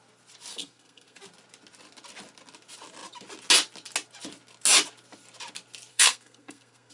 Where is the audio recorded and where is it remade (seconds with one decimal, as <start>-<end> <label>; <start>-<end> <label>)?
0.0-0.5 recorded; 0.5-1.2 remade; 1.2-5.9 recorded; 5.9-6.9 remade